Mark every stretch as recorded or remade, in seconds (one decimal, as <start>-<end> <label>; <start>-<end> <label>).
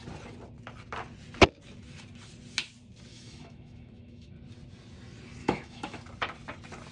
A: 0.0-3.1 recorded; 3.1-4.3 remade; 4.3-5.4 recorded; 5.4-6.0 remade; 6.0-6.9 recorded